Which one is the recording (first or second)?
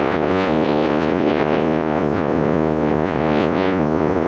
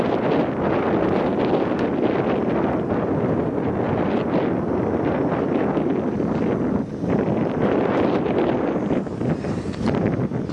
second